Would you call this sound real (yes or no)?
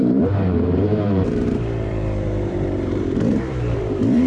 no